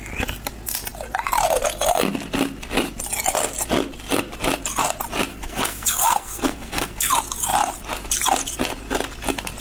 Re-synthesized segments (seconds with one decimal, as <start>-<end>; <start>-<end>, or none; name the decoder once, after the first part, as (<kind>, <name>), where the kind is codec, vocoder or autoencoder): 5.3-7.1 (codec, SNAC)